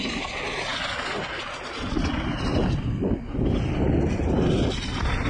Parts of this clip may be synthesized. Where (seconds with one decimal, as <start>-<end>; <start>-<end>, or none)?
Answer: none